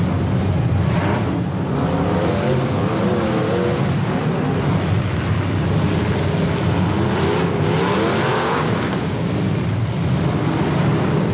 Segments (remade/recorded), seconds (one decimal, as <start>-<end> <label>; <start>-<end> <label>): 0.0-8.3 recorded; 8.3-9.3 remade; 9.3-11.3 recorded